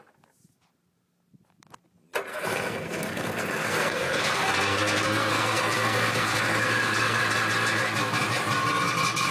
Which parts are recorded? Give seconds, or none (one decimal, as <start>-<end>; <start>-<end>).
0.0-2.3; 7.2-9.3